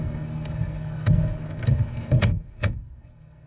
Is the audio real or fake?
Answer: fake